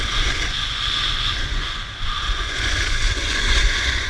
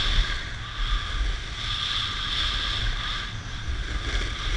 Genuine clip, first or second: second